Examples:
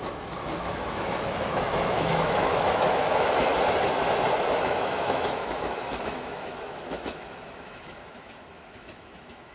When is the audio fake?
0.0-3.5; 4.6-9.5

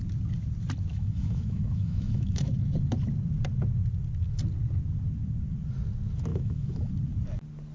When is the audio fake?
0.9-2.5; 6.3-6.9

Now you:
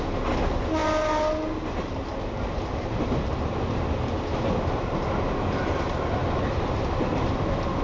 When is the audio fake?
none